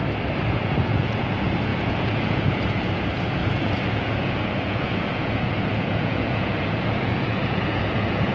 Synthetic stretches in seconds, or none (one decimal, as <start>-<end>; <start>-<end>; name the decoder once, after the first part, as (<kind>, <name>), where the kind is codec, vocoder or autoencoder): 0.5-8.3 (vocoder, Vocos)